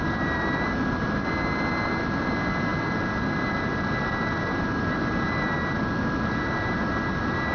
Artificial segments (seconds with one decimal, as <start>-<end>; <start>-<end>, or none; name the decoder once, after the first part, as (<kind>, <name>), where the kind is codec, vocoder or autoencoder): none